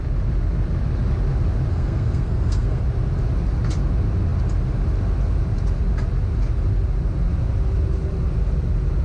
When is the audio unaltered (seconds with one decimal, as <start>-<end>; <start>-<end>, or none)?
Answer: 0.0-1.7; 2.8-9.0